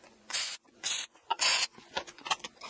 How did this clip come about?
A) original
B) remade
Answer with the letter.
B